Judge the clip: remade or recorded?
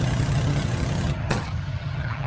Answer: remade